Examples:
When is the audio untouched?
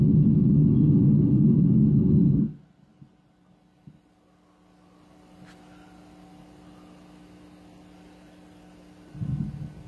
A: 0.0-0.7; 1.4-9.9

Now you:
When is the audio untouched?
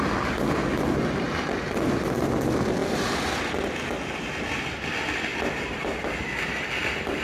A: 0.0-2.8; 3.7-5.3; 6.0-7.2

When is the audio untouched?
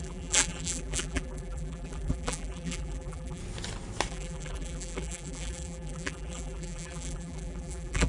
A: 3.4-4.1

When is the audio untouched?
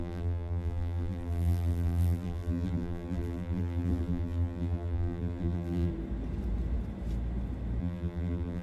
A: 5.9-7.8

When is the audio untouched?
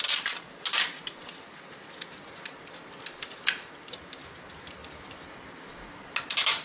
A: 0.0-6.6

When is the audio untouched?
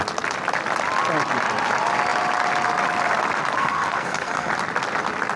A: 0.0-3.6; 4.5-5.4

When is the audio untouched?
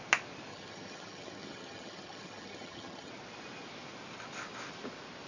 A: 0.0-0.5; 3.1-5.3